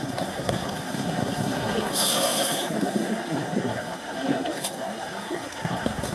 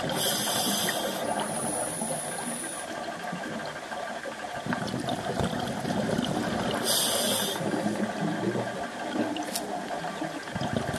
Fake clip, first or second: first